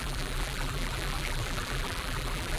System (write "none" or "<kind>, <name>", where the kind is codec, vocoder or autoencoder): vocoder, BigVGAN v2